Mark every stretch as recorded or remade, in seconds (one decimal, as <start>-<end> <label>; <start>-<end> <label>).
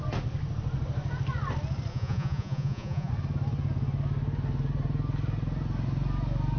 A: 0.0-1.9 recorded; 1.9-3.1 remade; 3.1-6.6 recorded